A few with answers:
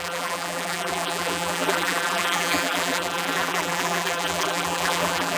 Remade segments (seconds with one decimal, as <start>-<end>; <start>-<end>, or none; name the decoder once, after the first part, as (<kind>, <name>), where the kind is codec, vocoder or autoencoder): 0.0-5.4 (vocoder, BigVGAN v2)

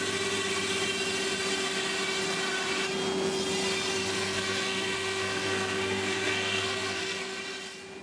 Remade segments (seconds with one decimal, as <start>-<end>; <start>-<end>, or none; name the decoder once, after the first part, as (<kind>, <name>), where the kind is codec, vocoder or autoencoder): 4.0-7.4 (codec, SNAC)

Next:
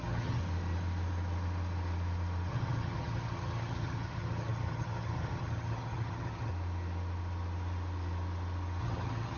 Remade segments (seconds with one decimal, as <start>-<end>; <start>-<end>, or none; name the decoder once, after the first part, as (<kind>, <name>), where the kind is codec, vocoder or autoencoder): 0.0-0.4 (vocoder, HiFi-GAN); 2.5-6.5; 8.8-9.4

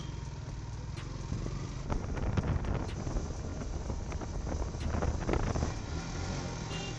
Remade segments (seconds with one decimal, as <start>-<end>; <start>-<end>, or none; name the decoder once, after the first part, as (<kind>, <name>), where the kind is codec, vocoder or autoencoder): none

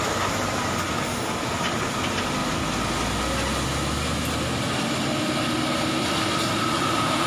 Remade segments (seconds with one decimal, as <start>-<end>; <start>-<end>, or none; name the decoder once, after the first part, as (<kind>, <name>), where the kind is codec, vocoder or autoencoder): none

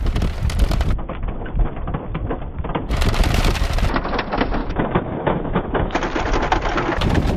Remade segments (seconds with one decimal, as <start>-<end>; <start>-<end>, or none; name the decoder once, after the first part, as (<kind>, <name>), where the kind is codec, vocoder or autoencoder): 4.6-6.0 (autoencoder, DAC-VAE)

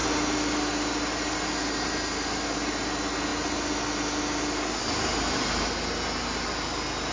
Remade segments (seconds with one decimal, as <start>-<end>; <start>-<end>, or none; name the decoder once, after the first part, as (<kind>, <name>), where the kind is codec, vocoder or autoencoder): none

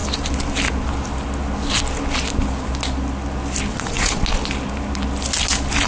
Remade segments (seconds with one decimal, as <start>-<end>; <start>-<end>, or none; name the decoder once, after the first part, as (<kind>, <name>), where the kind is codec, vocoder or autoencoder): 3.7-4.2 (vocoder, Vocos)